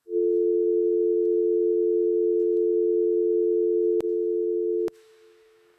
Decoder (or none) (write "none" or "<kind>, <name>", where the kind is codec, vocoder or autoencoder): autoencoder, DAC-VAE